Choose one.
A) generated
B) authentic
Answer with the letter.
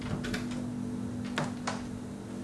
B